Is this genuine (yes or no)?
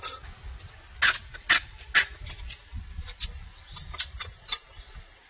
yes